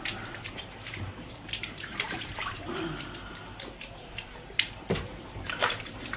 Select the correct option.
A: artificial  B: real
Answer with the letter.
A